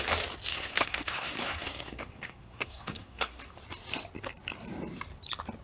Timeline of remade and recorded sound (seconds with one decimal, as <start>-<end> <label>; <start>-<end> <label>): 0.0-0.5 recorded; 0.5-3.4 remade; 3.4-5.6 recorded